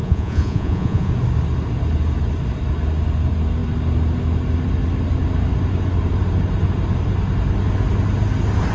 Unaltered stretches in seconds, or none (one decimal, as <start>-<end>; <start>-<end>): 1.1-8.7